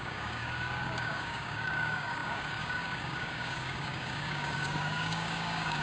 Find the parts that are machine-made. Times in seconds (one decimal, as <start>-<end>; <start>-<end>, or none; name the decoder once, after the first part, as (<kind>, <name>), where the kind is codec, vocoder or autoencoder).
0.0-5.8 (codec, DAC)